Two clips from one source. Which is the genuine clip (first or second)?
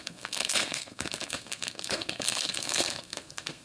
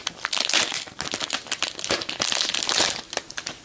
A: second